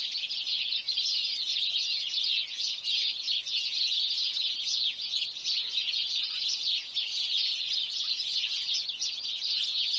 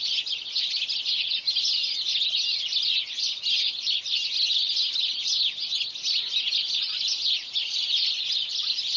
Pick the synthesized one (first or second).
first